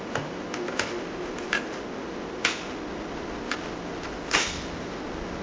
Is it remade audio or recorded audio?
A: recorded